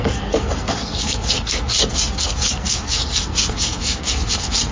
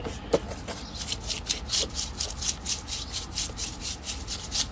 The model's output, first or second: first